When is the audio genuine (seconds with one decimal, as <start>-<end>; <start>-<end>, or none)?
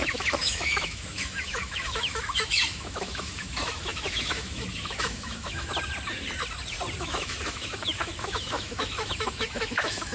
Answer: 5.7-7.0